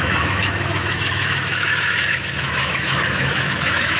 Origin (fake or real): fake